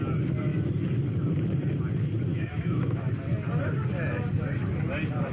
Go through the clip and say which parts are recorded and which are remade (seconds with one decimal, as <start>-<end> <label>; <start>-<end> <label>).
0.0-2.3 recorded; 2.3-3.1 remade; 3.1-5.3 recorded